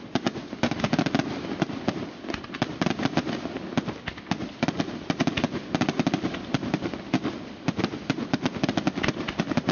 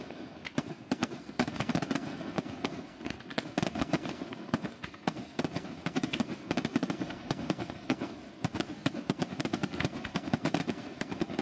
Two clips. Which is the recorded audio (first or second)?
first